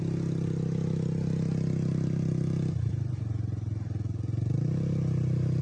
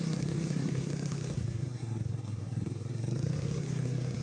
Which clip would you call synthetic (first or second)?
second